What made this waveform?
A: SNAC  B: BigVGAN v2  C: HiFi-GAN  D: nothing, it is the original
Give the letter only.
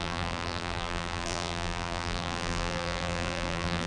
B